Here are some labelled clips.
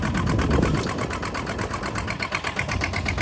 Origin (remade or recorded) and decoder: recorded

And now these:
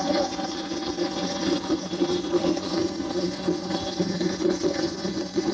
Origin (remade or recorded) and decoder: remade, vocoder, Vocos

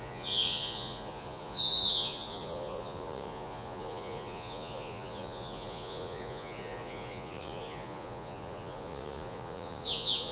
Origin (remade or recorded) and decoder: remade, vocoder, Vocos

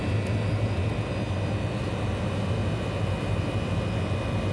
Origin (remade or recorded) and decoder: recorded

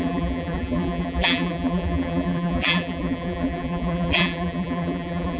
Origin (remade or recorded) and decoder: remade, vocoder, BigVGAN v2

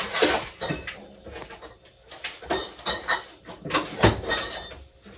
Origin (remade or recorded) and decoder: recorded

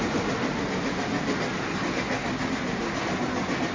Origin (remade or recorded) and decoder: recorded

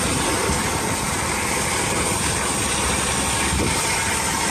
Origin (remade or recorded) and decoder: recorded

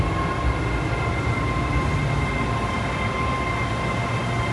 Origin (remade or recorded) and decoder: recorded